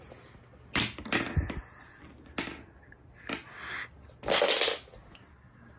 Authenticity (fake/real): real